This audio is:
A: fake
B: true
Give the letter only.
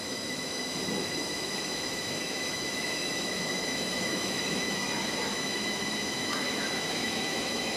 A